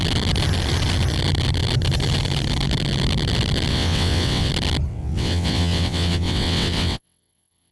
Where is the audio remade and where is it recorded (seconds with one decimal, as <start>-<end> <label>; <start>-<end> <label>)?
0.0-3.7 recorded; 3.7-4.5 remade; 4.5-4.9 recorded; 4.9-7.7 remade